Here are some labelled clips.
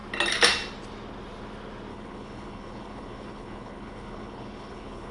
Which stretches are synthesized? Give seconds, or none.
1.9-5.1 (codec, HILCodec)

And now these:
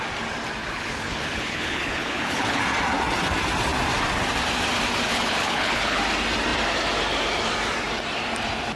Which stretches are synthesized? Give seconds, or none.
0.6-2.6 (codec, HILCodec); 5.1-6.0

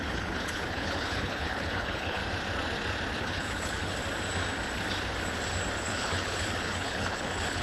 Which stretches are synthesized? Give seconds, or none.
0.0-2.2 (codec, HILCodec); 3.2-4.0; 5.8-7.6